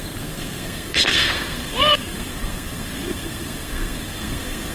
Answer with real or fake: fake